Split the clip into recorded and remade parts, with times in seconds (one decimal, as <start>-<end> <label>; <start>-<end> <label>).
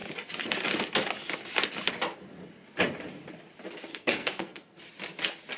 0.0-3.9 recorded; 3.9-4.8 remade; 4.8-5.6 recorded